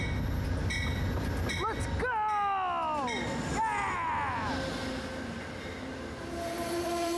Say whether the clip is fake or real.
real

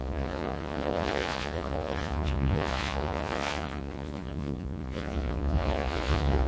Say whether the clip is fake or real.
fake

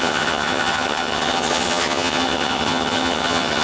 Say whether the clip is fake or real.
fake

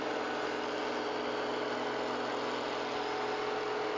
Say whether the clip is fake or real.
real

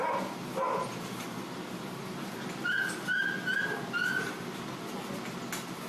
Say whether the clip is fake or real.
real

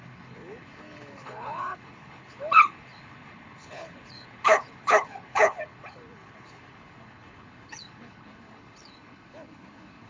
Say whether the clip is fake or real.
fake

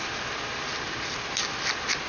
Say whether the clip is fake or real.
real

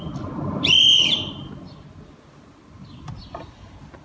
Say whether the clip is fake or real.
real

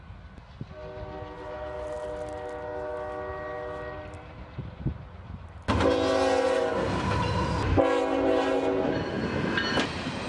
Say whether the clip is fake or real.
real